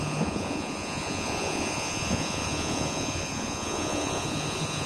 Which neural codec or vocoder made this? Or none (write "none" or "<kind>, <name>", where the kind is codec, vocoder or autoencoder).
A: vocoder, Vocos